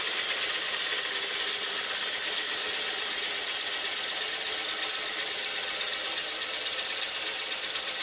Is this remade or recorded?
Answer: recorded